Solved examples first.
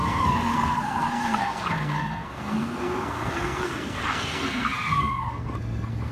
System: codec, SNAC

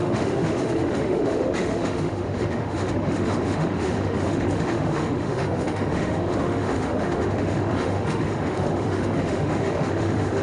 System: autoencoder, DAC-VAE